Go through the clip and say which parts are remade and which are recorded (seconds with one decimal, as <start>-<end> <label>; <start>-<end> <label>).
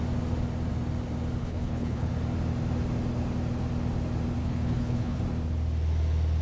0.0-1.4 recorded; 1.4-2.1 remade; 2.1-4.4 recorded; 4.4-5.2 remade; 5.2-6.4 recorded